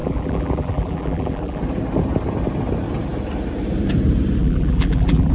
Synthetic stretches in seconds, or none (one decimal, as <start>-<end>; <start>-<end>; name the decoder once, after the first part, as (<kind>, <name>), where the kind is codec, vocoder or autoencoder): 0.0-1.6 (vocoder, BigVGAN v2); 4.4-5.3